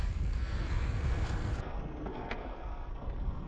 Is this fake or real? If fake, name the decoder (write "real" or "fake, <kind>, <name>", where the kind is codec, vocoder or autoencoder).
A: fake, codec, SNAC